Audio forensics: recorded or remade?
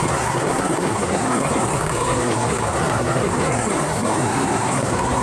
remade